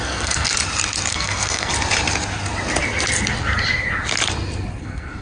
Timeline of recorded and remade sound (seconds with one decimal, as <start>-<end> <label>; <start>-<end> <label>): 0.0-0.5 remade; 0.5-1.1 recorded; 1.1-1.7 remade; 1.7-4.8 recorded; 4.8-5.2 remade